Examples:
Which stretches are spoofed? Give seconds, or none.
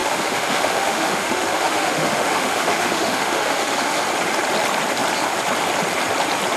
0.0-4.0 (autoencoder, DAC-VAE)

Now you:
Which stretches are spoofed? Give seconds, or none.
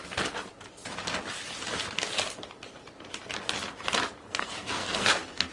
4.3-5.5 (codec, SNAC)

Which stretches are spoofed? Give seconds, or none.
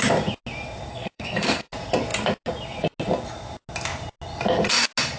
0.9-1.7 (codec, SNAC)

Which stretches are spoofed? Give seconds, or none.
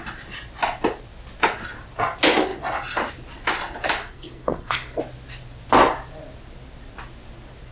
4.0-5.0 (codec, SNAC)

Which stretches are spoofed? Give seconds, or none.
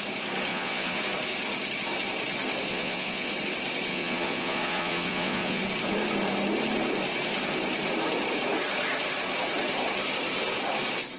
0.5-1.0 (vocoder, Vocos); 2.7-3.3; 3.9-5.6